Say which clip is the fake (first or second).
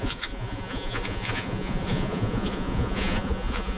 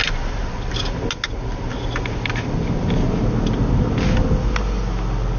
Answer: first